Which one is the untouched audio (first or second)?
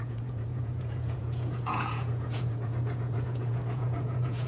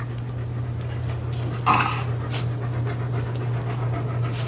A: second